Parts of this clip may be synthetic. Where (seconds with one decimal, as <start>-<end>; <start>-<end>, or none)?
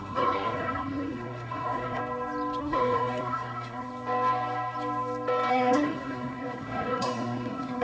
0.0-2.0; 2.6-3.9; 5.5-7.8